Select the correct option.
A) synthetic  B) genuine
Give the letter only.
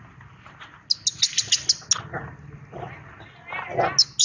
B